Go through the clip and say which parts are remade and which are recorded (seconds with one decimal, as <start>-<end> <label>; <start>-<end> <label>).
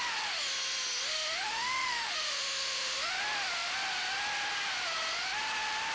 0.0-1.1 recorded; 1.1-3.2 remade; 3.2-5.9 recorded